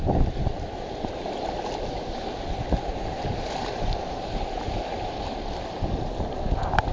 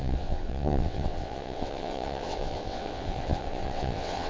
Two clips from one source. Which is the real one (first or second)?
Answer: first